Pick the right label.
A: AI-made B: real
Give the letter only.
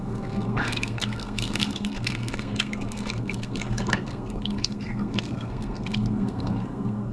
A